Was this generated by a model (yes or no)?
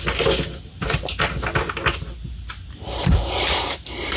no